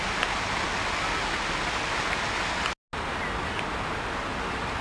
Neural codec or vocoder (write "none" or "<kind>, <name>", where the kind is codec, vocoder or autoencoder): none